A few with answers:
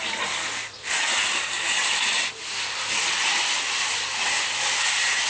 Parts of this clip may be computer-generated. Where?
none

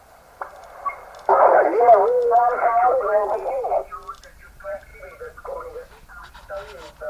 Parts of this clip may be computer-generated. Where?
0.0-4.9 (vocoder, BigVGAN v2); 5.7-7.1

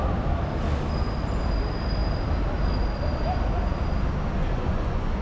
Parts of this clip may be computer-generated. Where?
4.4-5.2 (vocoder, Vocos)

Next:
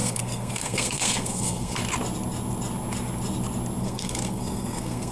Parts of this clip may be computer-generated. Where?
0.0-1.8 (codec, SNAC); 3.8-5.1

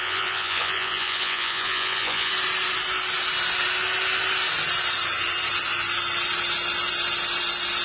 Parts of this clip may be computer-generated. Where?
0.0-2.3 (vocoder, Vocos)